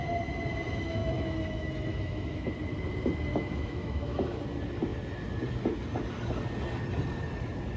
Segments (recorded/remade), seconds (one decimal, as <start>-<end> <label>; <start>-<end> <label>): 0.0-1.0 recorded; 1.0-2.5 remade; 2.5-3.3 recorded; 3.3-4.4 remade; 4.4-7.8 recorded